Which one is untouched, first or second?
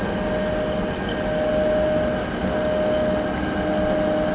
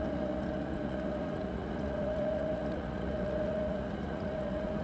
first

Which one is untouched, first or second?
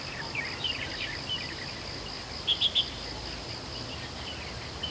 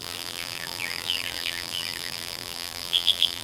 first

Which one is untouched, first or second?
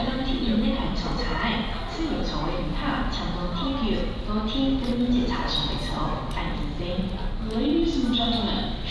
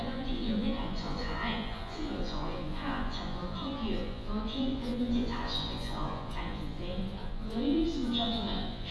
first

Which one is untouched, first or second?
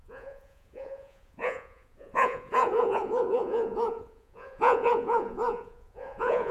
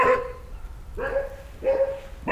second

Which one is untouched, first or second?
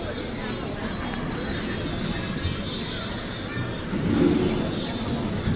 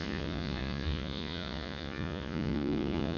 first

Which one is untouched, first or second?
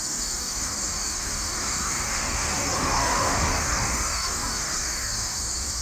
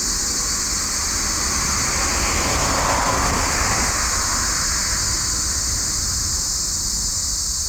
second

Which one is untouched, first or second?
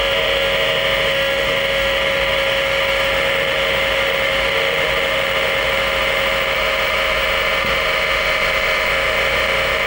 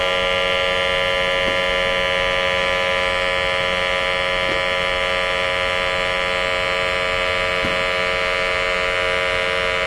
second